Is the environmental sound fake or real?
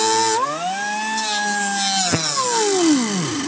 real